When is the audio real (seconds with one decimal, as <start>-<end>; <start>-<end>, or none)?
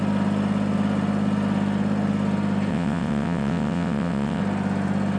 0.0-2.7; 4.4-5.2